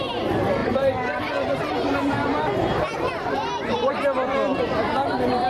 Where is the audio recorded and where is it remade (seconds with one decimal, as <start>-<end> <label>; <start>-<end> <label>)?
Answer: 0.0-0.6 recorded; 0.6-3.9 remade; 3.9-4.5 recorded; 4.5-5.5 remade